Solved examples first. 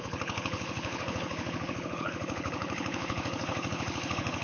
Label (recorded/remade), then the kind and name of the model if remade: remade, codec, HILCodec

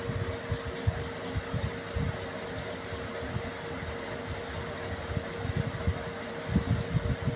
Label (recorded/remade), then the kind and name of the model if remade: recorded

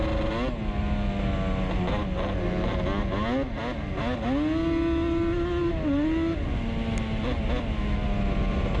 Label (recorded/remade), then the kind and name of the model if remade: recorded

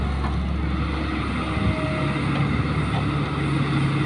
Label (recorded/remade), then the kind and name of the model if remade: recorded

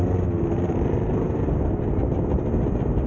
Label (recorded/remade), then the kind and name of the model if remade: recorded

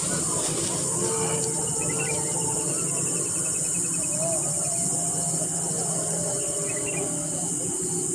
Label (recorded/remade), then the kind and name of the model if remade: recorded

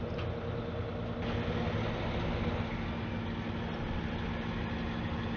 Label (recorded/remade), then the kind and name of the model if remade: recorded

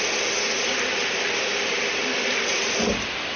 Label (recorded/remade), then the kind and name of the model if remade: recorded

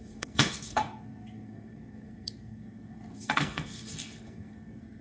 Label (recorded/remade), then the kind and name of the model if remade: remade, codec, SNAC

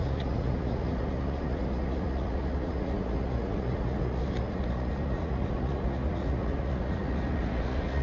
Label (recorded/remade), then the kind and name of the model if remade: remade, vocoder, Vocos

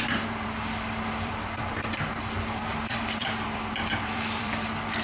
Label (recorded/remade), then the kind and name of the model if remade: remade, vocoder, BigVGAN v2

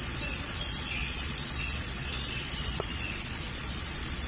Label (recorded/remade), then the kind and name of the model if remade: remade, vocoder, Vocos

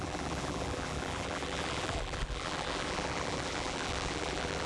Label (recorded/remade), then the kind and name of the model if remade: remade, vocoder, BigVGAN v2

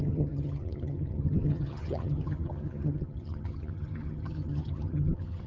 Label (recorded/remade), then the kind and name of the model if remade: remade, vocoder, HiFi-GAN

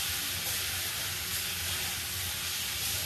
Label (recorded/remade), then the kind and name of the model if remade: recorded